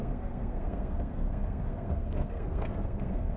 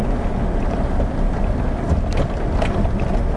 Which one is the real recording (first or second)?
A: second